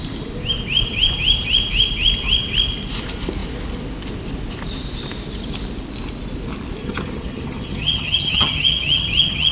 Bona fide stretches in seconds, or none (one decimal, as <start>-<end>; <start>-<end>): 0.0-6.8